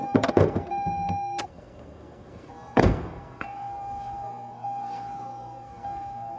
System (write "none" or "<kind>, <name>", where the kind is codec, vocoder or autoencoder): codec, SNAC